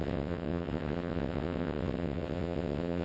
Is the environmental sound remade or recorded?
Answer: remade